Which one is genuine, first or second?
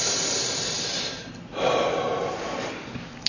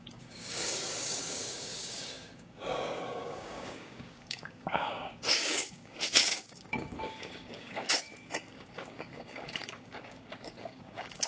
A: first